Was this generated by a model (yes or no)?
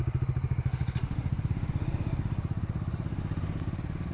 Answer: no